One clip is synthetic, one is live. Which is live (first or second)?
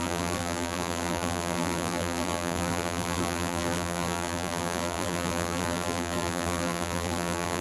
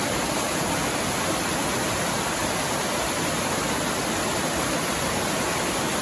second